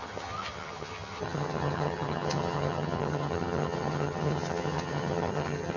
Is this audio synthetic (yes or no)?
yes